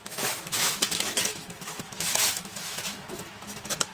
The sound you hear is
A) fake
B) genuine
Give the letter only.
A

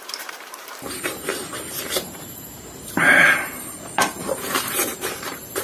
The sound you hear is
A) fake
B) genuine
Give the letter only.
A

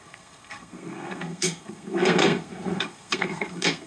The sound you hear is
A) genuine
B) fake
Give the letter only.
B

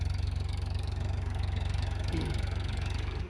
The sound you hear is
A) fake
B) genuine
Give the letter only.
A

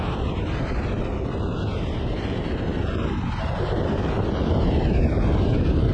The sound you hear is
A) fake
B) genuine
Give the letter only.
A